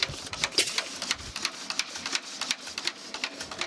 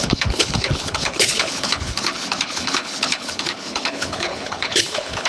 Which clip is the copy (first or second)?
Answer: second